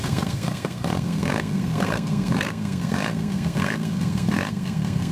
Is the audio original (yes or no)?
no